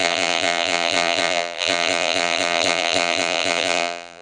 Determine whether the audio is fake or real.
fake